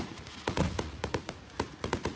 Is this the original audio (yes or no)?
no